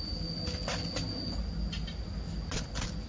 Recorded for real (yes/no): yes